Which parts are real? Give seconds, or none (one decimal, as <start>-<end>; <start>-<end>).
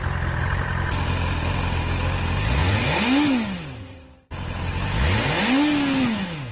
0.0-6.5